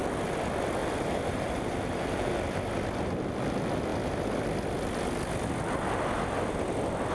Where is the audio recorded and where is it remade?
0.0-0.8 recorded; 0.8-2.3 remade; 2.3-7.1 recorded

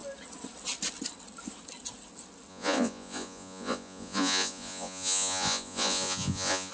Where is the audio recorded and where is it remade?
0.0-2.5 recorded; 2.5-6.7 remade